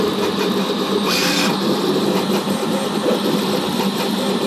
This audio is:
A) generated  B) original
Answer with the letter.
B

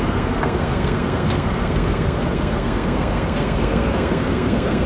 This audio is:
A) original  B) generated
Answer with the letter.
B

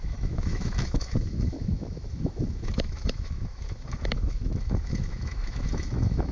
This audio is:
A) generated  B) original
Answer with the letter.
A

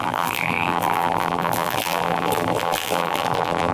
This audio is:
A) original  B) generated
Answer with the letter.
B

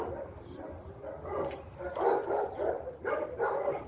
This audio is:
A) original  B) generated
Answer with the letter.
A